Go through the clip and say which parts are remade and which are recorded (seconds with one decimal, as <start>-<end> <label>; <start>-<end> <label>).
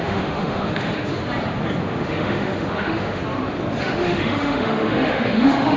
0.0-1.2 remade; 1.2-1.8 recorded; 1.8-3.2 remade; 3.2-3.8 recorded; 3.8-5.8 remade